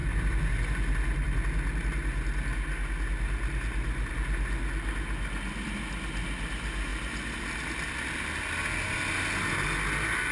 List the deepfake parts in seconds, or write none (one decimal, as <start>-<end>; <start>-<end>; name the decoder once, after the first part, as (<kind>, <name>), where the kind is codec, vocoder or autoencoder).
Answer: none